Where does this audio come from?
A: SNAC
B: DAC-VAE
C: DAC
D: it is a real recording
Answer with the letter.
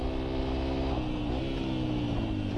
D